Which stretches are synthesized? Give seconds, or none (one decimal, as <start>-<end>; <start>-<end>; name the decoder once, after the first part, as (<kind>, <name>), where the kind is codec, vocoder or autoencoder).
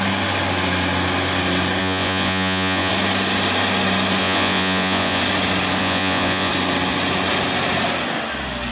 1.8-2.9 (vocoder, Vocos); 4.2-5.2; 5.8-6.5